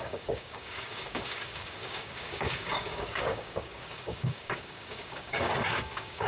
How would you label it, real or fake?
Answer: fake